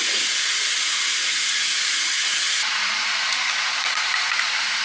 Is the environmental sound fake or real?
fake